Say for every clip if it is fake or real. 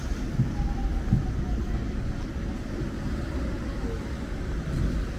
real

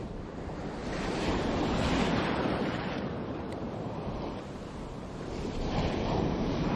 fake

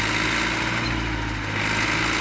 real